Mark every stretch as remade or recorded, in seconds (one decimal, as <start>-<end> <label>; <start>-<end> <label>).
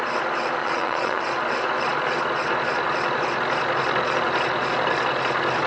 0.0-0.6 recorded; 0.6-1.2 remade; 1.2-5.7 recorded